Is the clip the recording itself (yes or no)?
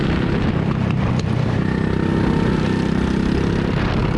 yes